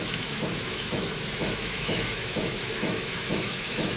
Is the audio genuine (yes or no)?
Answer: no